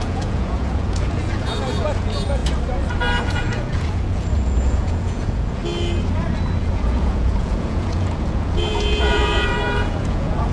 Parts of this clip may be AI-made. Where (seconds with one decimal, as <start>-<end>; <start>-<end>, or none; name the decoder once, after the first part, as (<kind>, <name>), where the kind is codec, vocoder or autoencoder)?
0.0-2.4 (vocoder, Vocos); 3.2-5.6; 6.6-10.5